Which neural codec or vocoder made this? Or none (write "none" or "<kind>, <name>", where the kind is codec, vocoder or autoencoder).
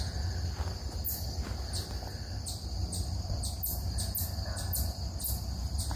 none